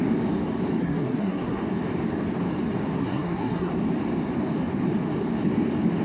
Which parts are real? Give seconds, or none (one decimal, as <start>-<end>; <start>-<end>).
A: 0.0-0.8; 1.6-3.0; 3.7-6.0